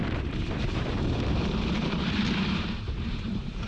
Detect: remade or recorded remade